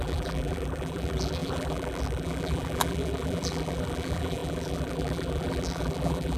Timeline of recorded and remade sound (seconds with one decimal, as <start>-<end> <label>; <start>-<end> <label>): 0.0-6.4 remade